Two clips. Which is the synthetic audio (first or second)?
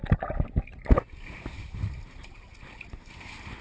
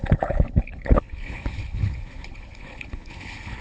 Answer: second